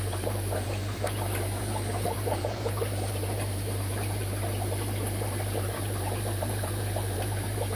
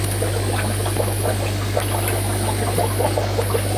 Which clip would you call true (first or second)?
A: second